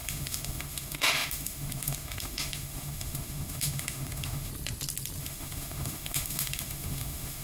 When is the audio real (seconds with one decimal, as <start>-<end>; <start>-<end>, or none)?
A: 4.5-5.2